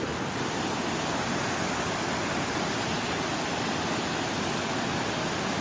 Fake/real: real